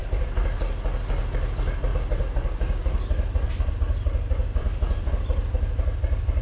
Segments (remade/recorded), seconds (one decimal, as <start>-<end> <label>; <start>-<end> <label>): 0.0-0.7 remade; 0.7-1.9 recorded; 1.9-3.7 remade; 3.7-4.6 recorded; 4.6-5.1 remade; 5.1-6.4 recorded